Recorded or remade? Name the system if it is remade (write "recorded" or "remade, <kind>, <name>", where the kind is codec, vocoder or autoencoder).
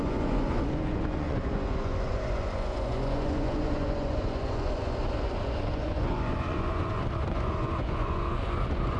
remade, vocoder, Vocos